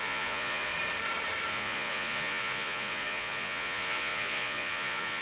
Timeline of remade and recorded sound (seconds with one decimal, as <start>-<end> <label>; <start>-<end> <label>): 0.0-0.7 remade; 0.7-1.5 recorded; 1.5-5.2 remade